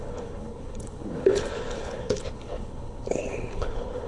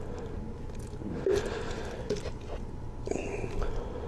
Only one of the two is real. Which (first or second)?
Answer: second